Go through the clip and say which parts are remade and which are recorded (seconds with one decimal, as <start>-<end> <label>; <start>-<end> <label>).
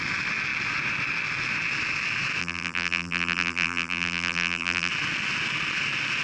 0.0-2.4 recorded; 2.4-4.9 remade; 4.9-6.2 recorded